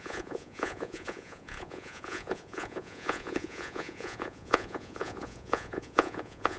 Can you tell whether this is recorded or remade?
remade